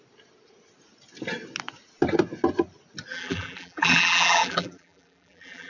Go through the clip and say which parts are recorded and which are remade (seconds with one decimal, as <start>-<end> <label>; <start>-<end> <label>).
0.0-3.1 recorded; 3.1-5.7 remade